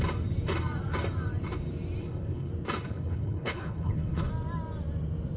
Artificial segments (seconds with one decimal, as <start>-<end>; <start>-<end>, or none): 2.0-2.5; 2.9-4.3